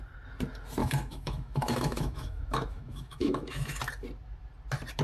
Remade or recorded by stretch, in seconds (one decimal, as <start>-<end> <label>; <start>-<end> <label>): 0.0-0.8 recorded; 0.8-3.8 remade; 3.8-5.0 recorded